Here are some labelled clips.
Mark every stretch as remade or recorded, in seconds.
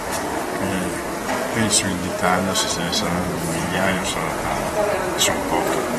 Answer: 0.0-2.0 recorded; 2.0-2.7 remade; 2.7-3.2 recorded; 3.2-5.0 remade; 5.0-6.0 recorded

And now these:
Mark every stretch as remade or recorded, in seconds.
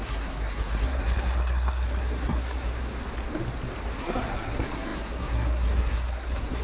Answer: 0.0-2.7 remade; 2.7-4.0 recorded; 4.0-6.6 remade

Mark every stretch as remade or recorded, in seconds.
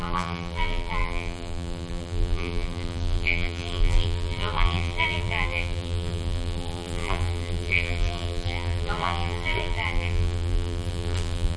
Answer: 0.0-11.6 remade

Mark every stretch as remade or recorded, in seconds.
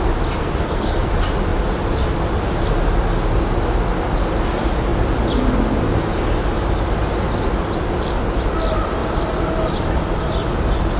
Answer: 0.0-0.4 recorded; 0.4-1.1 remade; 1.1-11.0 recorded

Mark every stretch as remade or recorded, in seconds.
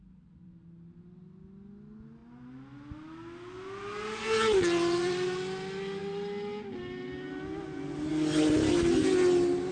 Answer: 0.0-9.7 recorded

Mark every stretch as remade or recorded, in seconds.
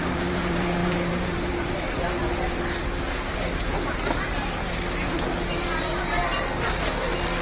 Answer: 0.0-2.2 remade; 2.2-5.8 recorded; 5.8-6.2 remade; 6.2-7.4 recorded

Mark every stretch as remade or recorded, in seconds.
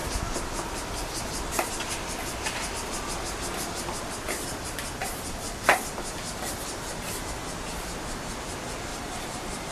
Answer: 0.0-8.9 recorded; 8.9-9.7 remade